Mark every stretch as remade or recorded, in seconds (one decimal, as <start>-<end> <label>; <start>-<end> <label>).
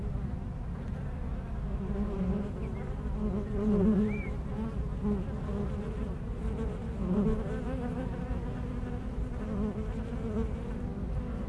0.0-11.5 recorded